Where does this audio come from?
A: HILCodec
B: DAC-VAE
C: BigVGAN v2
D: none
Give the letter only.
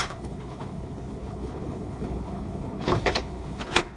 A